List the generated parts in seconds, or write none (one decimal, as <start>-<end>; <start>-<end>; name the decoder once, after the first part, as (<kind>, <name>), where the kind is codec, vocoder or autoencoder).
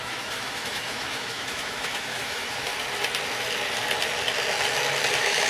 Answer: 0.0-2.7 (autoencoder, DAC-VAE); 5.1-5.5